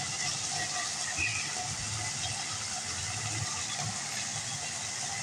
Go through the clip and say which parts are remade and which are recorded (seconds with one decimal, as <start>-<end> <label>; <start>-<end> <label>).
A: 0.0-5.2 recorded